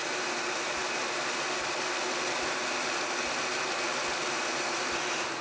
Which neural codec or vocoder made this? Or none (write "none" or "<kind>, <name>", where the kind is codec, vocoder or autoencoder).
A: none